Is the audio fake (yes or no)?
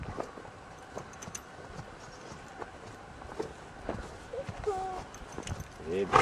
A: no